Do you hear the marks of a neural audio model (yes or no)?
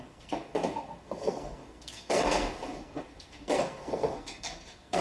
yes